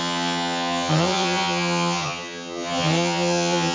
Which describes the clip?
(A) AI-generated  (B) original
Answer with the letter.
A